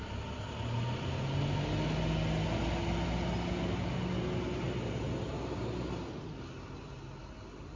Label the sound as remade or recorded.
recorded